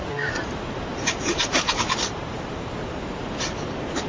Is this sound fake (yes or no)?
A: yes